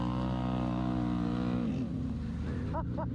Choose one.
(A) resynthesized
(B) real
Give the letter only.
B